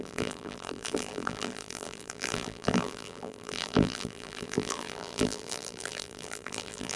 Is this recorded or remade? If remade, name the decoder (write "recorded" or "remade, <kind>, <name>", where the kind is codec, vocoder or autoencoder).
remade, vocoder, BigVGAN v2